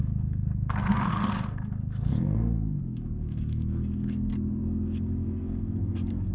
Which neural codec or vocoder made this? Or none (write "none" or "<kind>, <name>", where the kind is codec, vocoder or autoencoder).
codec, SNAC